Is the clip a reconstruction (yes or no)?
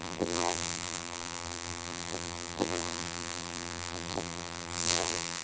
yes